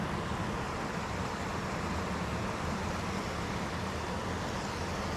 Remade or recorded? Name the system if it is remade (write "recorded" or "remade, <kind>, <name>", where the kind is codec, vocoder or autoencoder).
recorded